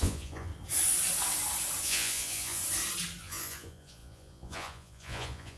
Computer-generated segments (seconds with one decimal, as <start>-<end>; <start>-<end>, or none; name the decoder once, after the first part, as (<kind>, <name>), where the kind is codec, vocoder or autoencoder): 0.0-0.5 (vocoder, Vocos); 1.8-2.6; 3.2-5.6

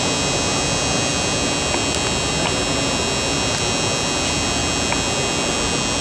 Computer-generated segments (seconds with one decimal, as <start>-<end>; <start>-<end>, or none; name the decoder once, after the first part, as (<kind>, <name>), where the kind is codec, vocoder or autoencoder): none

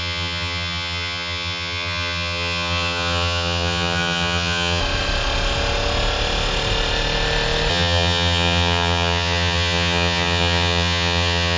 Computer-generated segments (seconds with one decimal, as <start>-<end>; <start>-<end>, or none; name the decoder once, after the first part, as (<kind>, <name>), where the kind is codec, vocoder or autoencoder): 0.0-4.8 (vocoder, HiFi-GAN); 7.7-11.6

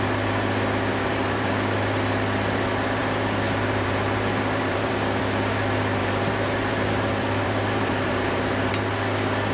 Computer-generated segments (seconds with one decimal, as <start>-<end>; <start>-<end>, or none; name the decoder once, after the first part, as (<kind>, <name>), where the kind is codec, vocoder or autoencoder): 0.9-1.5 (vocoder, BigVGAN v2); 3.0-5.2; 6.0-8.7

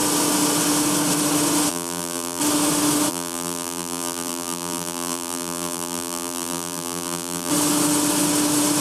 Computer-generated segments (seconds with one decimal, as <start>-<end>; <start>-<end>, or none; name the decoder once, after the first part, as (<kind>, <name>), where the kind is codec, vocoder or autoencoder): 1.7-2.4 (vocoder, BigVGAN v2); 3.1-7.5

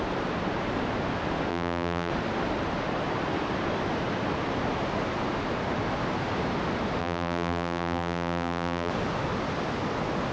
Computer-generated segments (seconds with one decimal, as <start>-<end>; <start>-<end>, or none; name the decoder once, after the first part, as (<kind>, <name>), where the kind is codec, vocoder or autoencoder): 1.5-2.1 (vocoder, BigVGAN v2); 7.0-8.9

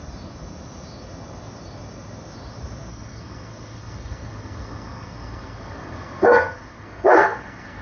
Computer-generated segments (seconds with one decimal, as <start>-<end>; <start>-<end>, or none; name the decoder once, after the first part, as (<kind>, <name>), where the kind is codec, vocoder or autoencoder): 2.9-7.8 (codec, SNAC)